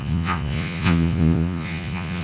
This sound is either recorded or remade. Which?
remade